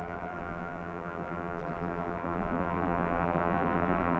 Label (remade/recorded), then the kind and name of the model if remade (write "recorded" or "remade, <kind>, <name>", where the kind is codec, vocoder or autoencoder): remade, vocoder, BigVGAN v2